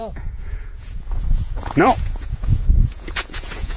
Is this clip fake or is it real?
fake